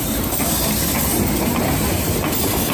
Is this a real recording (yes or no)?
yes